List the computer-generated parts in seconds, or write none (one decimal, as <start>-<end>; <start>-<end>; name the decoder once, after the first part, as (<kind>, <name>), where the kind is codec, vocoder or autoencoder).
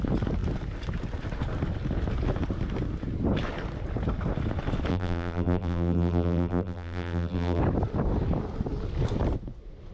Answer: 4.9-7.6 (vocoder, BigVGAN v2)